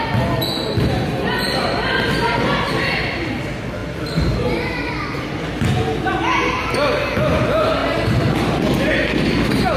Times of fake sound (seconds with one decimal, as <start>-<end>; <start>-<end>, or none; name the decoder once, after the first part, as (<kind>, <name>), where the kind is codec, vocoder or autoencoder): 3.8-4.6 (vocoder, BigVGAN v2)